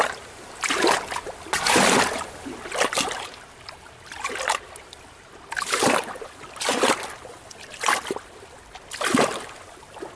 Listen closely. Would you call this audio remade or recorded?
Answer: recorded